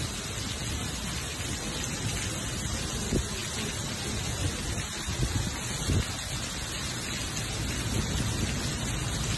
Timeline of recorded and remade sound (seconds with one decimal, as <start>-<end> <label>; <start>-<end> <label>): 0.0-9.4 recorded